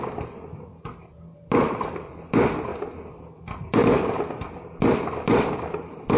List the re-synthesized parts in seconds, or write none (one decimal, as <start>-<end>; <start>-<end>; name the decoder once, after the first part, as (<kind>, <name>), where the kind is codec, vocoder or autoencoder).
none